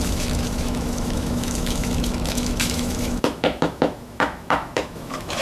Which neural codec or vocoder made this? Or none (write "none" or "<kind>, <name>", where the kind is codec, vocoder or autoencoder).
autoencoder, DAC-VAE